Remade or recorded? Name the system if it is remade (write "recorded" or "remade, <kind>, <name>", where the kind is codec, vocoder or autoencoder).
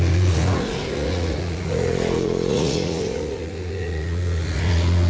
remade, vocoder, Vocos